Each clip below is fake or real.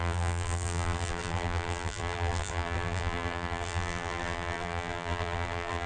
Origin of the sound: fake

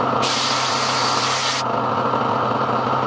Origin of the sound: real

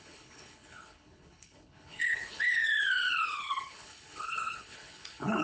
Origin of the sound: fake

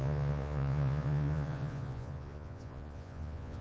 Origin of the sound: fake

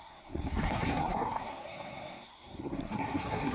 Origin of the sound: fake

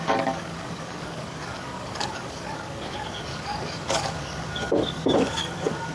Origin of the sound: fake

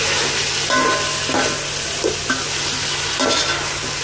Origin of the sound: real